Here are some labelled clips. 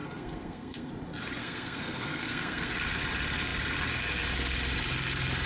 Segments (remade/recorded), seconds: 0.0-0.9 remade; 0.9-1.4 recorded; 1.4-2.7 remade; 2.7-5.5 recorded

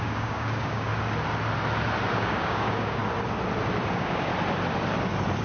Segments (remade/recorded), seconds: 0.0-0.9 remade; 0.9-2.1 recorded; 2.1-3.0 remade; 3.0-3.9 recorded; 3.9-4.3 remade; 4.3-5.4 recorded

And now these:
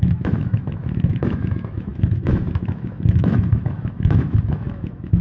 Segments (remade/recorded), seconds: 0.0-5.2 remade

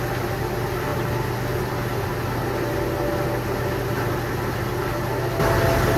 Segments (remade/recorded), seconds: 0.0-6.0 recorded

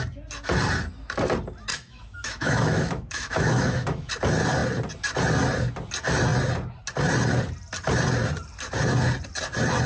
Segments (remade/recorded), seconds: 0.0-1.7 recorded; 1.7-4.1 remade; 4.1-9.9 recorded